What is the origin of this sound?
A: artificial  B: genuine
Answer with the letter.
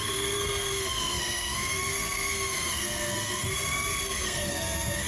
A